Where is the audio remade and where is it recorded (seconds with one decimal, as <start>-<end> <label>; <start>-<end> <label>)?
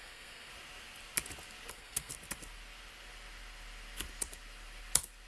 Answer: 0.0-0.5 remade; 0.5-1.7 recorded; 1.7-2.1 remade; 2.1-5.3 recorded